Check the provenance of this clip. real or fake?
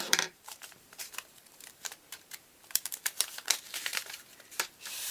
fake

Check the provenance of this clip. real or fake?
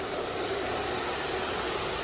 fake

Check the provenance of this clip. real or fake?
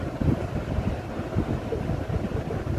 real